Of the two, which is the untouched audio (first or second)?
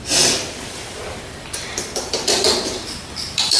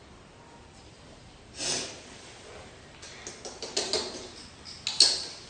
second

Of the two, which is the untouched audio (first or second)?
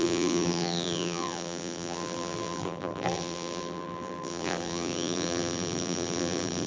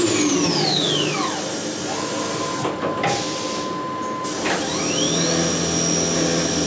second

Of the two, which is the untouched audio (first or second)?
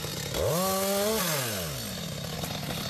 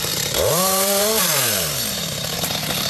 first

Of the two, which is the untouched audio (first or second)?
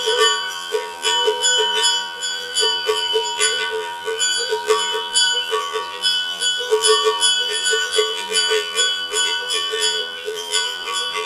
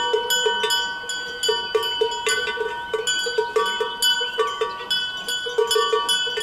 second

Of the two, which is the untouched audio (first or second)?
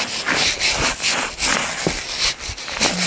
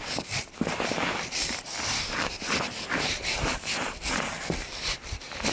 first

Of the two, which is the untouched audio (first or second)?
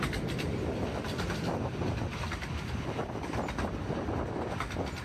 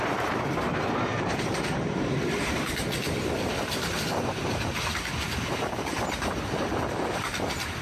first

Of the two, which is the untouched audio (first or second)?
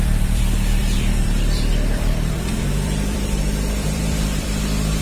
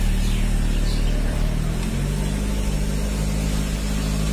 second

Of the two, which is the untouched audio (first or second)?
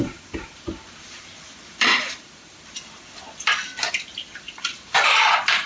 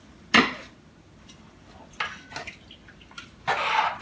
second